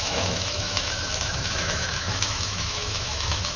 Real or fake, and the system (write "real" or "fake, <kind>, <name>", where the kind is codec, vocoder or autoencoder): fake, autoencoder, DAC-VAE